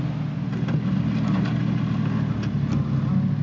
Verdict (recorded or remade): recorded